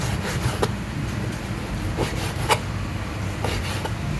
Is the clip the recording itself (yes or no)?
no